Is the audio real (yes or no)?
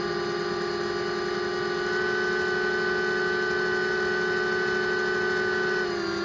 yes